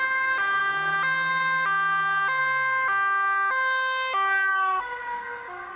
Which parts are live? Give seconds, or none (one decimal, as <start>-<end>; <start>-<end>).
0.0-4.5